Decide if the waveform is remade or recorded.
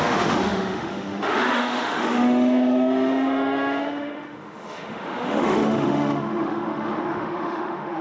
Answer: remade